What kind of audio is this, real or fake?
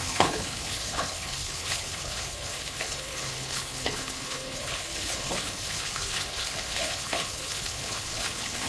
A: fake